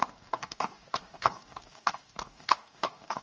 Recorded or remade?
remade